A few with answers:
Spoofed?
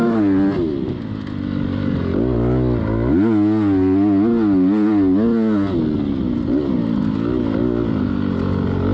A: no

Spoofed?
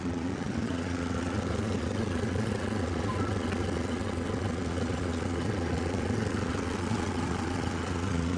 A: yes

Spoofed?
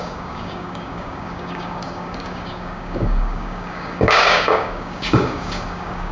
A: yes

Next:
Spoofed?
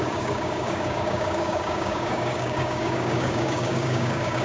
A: yes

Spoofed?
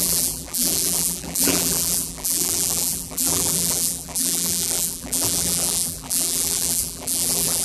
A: yes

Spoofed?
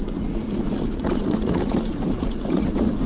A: yes